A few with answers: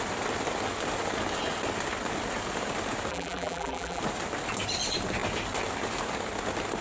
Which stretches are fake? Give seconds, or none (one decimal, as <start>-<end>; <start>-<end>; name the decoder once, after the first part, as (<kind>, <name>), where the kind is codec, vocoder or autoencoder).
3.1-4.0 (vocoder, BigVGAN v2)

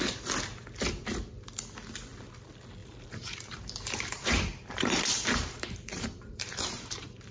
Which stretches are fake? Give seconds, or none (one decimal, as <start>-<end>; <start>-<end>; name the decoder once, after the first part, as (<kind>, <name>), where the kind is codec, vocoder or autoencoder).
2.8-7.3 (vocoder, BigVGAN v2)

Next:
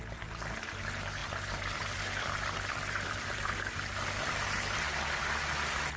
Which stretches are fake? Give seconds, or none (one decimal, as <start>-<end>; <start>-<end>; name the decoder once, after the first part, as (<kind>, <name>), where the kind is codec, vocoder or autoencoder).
1.2-4.8 (vocoder, BigVGAN v2)